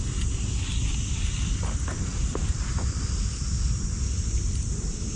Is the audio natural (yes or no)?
yes